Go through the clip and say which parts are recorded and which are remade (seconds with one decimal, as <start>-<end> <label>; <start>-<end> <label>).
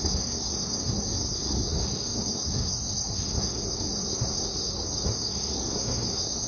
0.0-6.5 remade